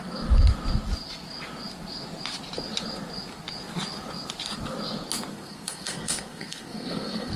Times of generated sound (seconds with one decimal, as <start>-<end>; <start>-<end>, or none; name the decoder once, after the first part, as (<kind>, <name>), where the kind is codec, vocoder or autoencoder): 5.3-7.4 (codec, SNAC)